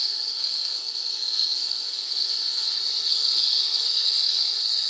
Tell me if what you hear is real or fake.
fake